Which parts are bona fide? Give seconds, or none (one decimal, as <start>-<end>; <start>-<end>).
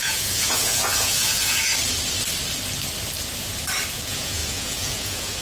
1.7-3.9